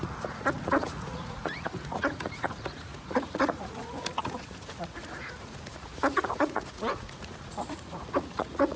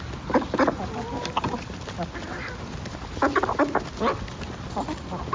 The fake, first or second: first